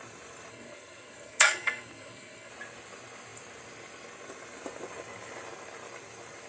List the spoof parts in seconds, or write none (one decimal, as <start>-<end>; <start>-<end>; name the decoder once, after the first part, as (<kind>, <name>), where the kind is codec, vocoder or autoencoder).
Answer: 0.5-2.5 (codec, SNAC)